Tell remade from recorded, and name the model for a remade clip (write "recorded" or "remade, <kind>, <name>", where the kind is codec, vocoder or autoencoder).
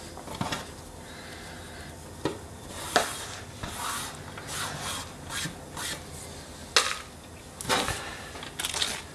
recorded